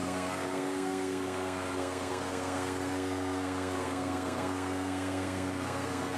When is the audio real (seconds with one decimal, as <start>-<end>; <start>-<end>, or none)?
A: none